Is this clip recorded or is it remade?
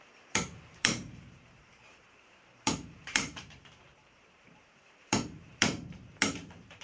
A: remade